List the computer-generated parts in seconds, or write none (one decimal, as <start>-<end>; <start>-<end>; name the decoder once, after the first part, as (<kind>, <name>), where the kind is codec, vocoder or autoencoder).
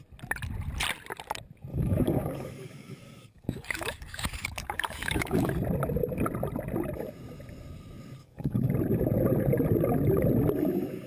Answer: 1.7-5.5 (codec, DAC); 8.2-8.7